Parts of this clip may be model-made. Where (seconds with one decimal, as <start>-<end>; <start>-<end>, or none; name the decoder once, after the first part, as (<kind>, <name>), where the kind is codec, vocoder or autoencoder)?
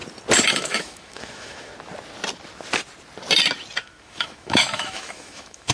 0.5-1.7 (autoencoder, DAC-VAE); 3.8-5.7